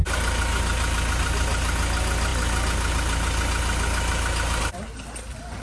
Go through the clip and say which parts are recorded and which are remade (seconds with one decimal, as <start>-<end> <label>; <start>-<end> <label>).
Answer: 0.0-5.6 recorded